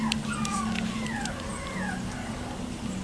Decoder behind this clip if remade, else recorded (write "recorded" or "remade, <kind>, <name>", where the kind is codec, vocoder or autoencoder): recorded